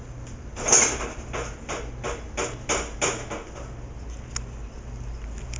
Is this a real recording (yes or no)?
yes